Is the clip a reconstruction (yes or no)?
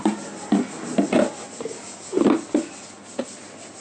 no